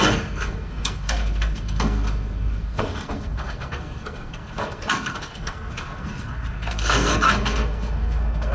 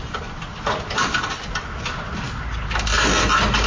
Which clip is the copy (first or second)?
first